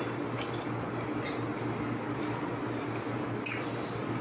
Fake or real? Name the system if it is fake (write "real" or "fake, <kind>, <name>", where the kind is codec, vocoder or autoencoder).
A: real